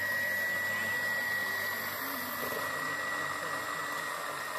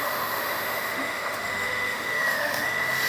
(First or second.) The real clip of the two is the first